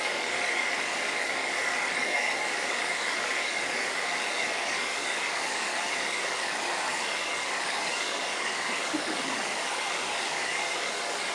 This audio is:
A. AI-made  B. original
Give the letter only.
A